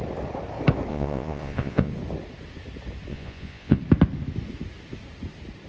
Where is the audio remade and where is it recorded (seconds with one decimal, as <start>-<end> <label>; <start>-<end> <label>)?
0.0-0.9 recorded; 0.9-1.9 remade; 1.9-3.1 recorded; 3.1-3.8 remade; 3.8-5.7 recorded